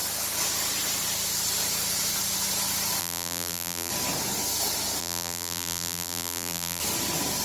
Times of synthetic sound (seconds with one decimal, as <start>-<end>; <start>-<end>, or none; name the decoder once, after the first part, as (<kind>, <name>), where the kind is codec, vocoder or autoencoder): 3.0-3.9 (vocoder, BigVGAN v2); 5.0-6.8